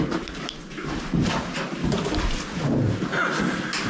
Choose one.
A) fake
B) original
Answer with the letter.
B